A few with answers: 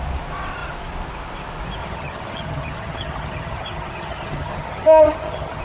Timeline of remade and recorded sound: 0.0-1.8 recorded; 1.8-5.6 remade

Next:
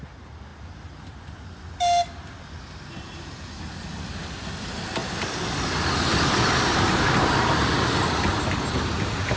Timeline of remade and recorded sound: 0.0-9.4 recorded

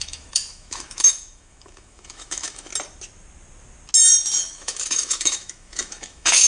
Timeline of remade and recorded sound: 0.0-2.7 remade; 2.7-4.4 recorded; 4.4-6.5 remade

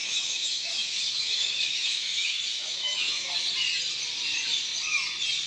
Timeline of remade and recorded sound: 0.0-3.3 remade; 3.3-5.5 recorded

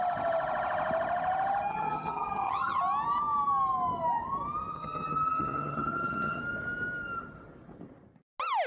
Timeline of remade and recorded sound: 0.0-1.7 recorded; 1.7-2.8 remade; 2.8-4.7 recorded; 4.7-6.4 remade; 6.4-8.7 recorded